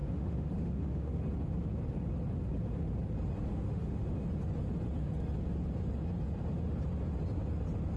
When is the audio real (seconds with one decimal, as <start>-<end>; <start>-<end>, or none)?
1.2-3.5; 4.1-8.0